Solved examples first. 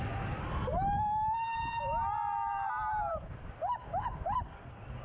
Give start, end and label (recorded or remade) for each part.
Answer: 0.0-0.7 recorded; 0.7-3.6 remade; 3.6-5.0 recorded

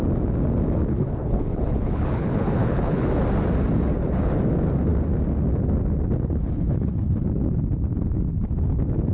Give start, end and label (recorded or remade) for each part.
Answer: 0.0-0.9 recorded; 0.9-3.1 remade; 3.1-6.4 recorded; 6.4-7.2 remade; 7.2-9.1 recorded

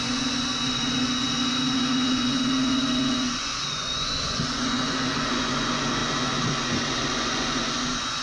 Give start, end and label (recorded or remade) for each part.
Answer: 0.0-8.2 remade

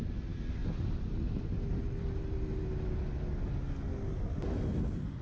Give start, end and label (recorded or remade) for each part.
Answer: 0.0-5.2 recorded

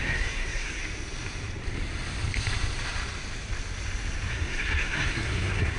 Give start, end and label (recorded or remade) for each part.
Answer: 0.0-0.8 remade; 0.8-4.3 recorded; 4.3-5.8 remade

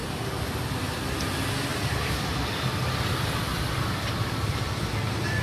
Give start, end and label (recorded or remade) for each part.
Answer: 0.0-0.5 remade; 0.5-1.7 recorded; 1.7-4.9 remade; 4.9-5.4 recorded